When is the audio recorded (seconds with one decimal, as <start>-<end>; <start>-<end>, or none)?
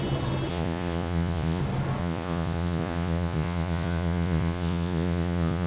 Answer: 0.0-0.5; 1.6-2.0